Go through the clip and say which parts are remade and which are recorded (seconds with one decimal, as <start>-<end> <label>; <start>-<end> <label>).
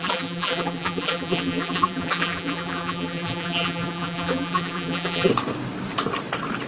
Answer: 0.0-5.3 remade; 5.3-6.7 recorded